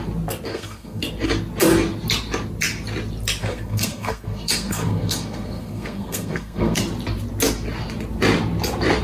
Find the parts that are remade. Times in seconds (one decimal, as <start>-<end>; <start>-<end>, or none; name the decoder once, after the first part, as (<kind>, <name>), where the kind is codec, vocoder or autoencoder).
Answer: 0.5-1.0 (codec, SNAC); 3.4-6.8